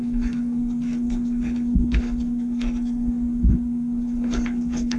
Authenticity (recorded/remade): remade